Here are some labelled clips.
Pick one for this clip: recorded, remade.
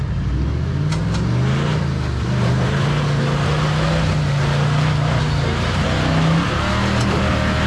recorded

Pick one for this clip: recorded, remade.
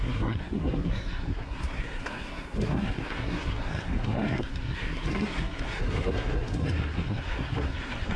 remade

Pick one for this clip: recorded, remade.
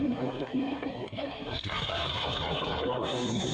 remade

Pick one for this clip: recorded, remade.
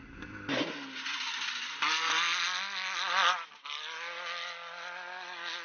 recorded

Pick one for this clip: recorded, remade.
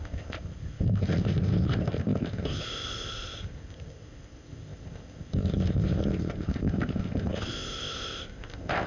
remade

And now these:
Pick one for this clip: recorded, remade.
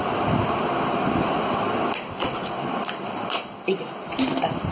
recorded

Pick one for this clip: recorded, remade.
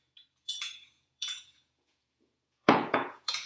remade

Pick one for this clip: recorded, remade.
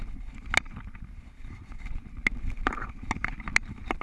recorded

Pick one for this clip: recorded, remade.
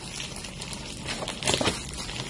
recorded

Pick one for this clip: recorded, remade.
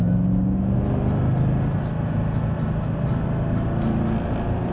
recorded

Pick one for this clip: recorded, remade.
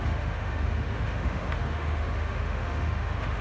remade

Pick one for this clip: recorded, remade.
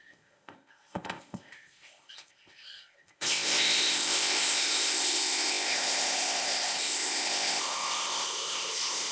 remade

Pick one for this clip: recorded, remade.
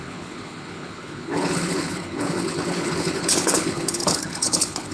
remade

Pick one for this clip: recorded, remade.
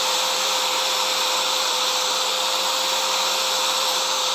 remade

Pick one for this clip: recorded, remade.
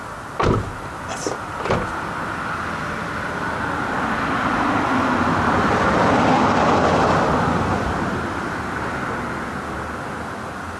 recorded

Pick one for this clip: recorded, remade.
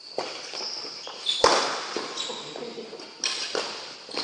recorded